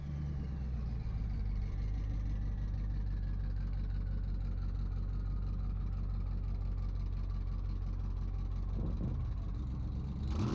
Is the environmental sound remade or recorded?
recorded